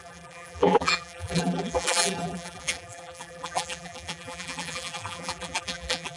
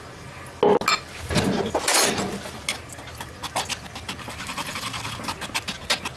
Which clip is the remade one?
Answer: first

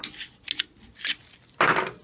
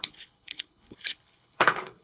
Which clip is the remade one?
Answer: second